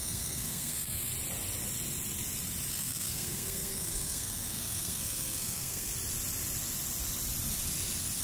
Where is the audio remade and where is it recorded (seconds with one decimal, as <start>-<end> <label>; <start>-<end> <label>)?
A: 0.0-1.1 remade; 1.1-2.7 recorded; 2.7-5.9 remade; 5.9-8.2 recorded